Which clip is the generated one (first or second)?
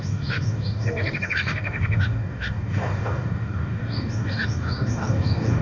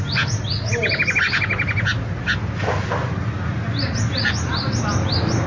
first